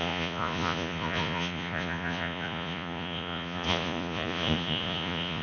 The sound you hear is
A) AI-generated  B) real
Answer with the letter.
A